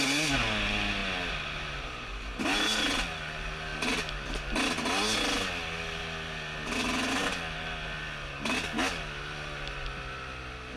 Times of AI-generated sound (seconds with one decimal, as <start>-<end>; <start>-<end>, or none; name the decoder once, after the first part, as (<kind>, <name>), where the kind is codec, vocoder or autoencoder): none